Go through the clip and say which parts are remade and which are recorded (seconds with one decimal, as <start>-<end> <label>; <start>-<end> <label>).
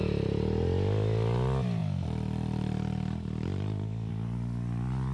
0.0-5.1 recorded